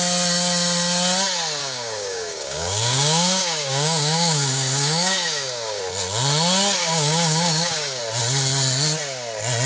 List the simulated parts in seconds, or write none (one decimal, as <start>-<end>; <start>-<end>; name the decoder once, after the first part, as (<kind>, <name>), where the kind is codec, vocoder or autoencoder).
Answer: 1.6-5.8 (codec, DAC); 6.8-8.0